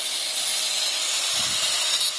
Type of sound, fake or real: real